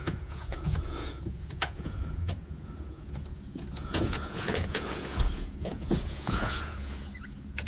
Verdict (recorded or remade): remade